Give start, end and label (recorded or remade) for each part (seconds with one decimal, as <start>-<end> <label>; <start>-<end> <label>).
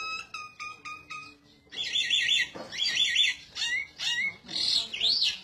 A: 0.0-5.4 recorded